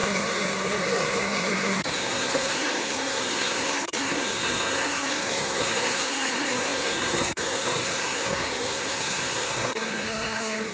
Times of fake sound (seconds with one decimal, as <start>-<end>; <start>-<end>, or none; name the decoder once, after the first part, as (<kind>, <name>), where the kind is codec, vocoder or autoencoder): 0.0-10.7 (codec, SNAC)